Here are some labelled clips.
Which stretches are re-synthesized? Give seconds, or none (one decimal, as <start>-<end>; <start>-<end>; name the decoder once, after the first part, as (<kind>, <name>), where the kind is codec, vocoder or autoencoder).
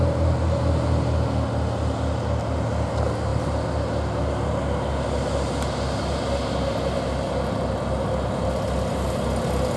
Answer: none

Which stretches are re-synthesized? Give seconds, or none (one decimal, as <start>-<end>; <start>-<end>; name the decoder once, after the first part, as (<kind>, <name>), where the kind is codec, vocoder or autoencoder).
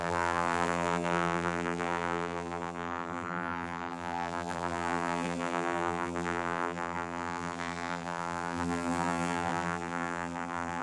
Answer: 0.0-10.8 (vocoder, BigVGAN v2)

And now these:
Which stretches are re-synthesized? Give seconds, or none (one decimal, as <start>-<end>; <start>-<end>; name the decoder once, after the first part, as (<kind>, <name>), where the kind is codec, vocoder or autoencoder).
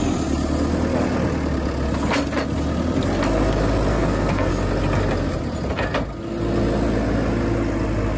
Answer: 3.9-4.5 (codec, SNAC)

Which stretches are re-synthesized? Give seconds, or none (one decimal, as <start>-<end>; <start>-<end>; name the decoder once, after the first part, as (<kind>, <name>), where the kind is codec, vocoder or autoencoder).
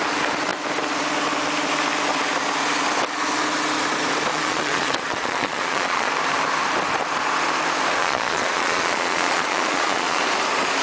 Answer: 4.3-6.1 (vocoder, Vocos); 8.0-10.2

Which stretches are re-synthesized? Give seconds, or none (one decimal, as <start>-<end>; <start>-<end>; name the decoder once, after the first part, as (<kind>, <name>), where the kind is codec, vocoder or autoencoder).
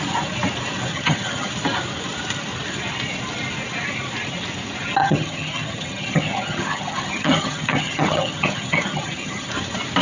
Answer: 0.9-1.5 (vocoder, HiFi-GAN); 5.0-9.5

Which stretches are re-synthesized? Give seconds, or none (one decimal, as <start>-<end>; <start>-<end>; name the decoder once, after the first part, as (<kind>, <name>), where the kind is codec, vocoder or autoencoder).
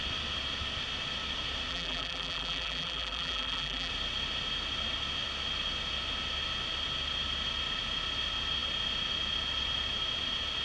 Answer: 1.7-3.9 (vocoder, BigVGAN v2)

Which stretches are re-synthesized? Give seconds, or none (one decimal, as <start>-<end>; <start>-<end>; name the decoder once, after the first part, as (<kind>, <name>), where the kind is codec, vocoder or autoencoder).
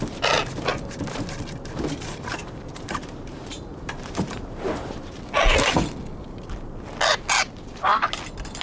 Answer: 2.4-5.2 (vocoder, BigVGAN v2)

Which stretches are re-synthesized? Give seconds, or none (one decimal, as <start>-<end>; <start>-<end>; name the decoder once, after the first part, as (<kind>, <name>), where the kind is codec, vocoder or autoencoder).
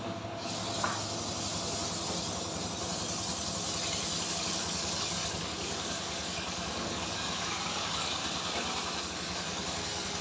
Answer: 0.0-0.6 (codec, DAC); 4.3-8.2; 9.1-10.2